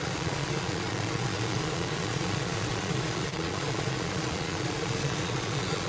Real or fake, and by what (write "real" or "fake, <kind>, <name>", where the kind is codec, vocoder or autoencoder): fake, vocoder, Vocos